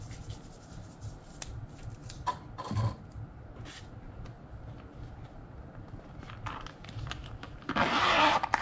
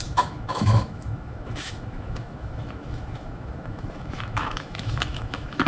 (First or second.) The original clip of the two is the first